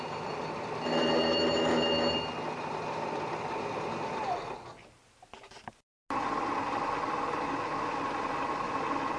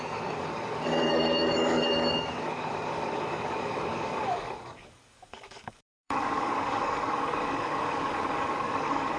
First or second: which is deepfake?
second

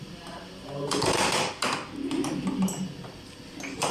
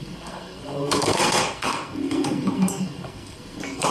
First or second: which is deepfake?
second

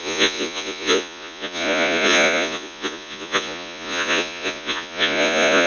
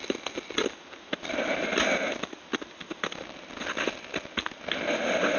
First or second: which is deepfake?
first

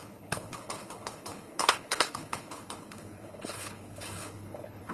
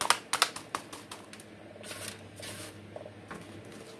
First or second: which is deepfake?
first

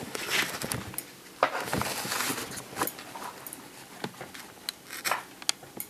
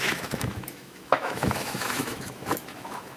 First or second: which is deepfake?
second